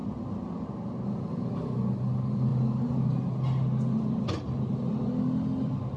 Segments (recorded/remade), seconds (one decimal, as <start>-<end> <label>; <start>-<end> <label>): 0.0-6.0 recorded